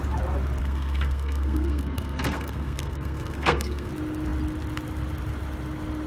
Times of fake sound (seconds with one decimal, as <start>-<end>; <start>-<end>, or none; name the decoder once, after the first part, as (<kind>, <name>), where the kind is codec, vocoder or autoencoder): 0.6-3.9 (codec, SNAC)